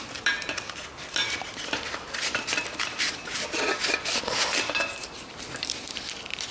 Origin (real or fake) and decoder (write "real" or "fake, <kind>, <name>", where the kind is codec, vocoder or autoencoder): fake, vocoder, BigVGAN v2